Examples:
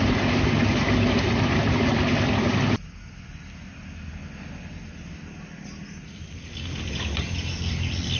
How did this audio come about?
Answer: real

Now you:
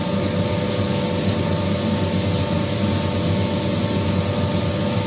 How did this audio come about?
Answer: real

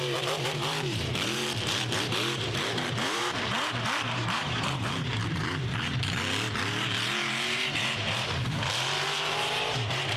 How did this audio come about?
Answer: fake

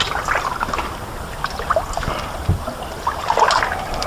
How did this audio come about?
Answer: real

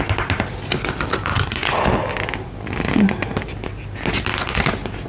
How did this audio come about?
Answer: real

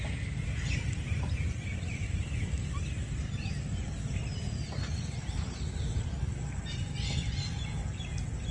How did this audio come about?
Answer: real